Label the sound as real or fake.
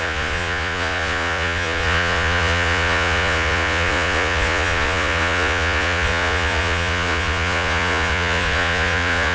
fake